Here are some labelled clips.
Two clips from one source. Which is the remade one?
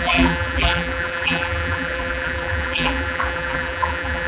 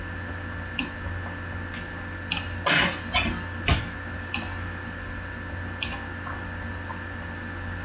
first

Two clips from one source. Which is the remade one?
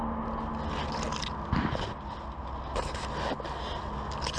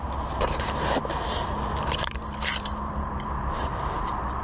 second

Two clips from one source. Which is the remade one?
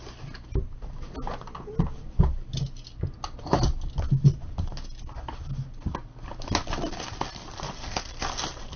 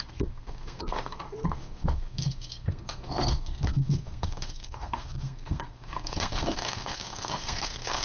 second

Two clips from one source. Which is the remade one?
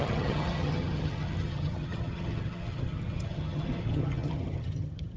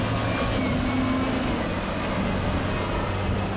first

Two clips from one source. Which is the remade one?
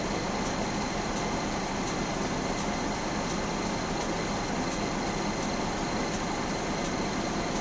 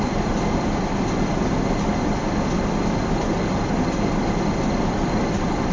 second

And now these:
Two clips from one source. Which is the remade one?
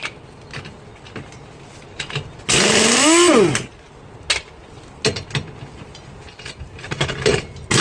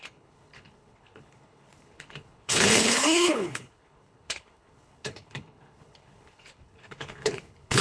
second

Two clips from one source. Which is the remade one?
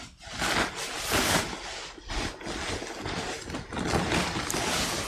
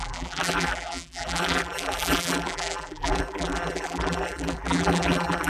second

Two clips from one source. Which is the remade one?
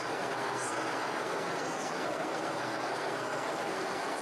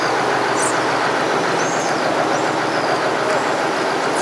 first